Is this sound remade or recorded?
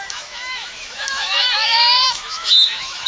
remade